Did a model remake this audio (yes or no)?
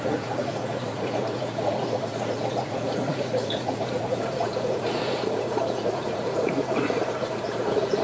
yes